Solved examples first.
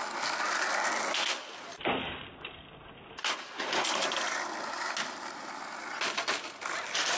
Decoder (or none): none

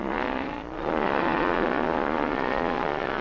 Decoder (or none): vocoder, Vocos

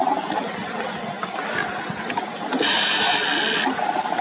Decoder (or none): none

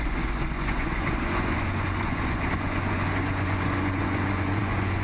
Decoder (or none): vocoder, Vocos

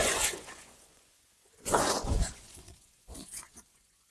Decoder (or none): vocoder, Vocos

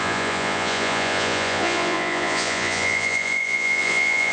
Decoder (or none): vocoder, Vocos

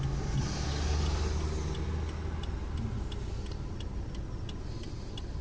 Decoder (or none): none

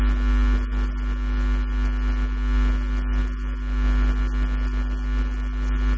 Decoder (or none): none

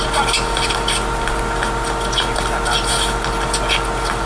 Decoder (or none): none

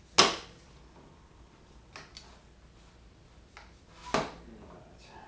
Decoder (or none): none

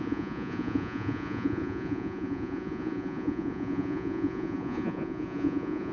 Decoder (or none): vocoder, Vocos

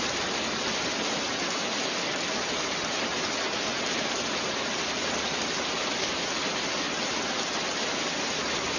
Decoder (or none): none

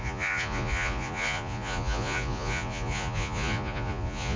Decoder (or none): vocoder, Vocos